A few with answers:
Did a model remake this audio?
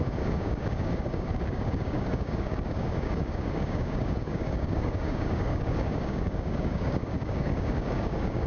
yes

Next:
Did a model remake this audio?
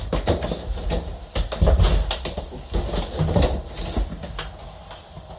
no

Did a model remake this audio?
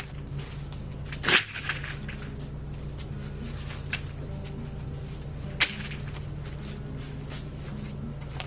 no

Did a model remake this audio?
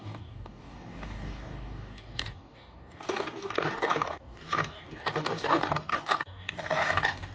yes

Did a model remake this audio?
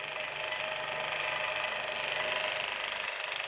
no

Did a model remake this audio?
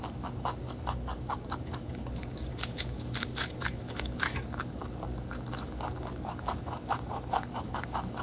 yes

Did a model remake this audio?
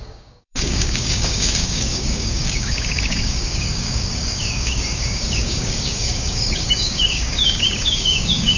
yes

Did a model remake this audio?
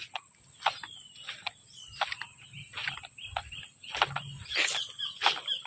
no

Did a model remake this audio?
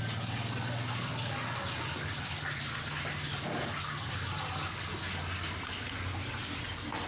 no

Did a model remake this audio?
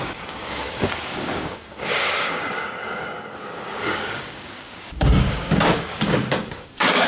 yes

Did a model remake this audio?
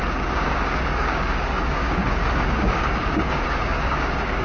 yes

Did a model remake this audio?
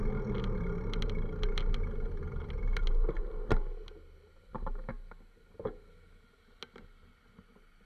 no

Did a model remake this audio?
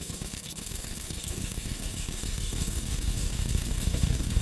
yes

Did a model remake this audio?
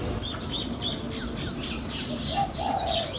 no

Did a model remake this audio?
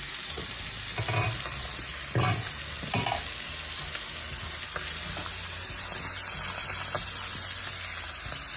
no